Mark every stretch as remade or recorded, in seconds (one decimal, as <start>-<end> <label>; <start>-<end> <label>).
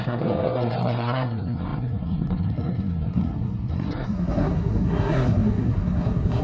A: 0.0-6.4 remade